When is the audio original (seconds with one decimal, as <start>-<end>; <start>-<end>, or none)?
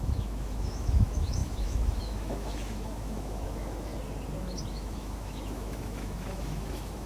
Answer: 3.9-4.7